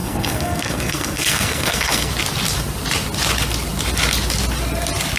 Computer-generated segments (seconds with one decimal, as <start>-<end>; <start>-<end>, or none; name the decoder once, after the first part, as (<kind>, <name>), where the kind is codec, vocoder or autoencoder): 0.0-2.1 (codec, SNAC)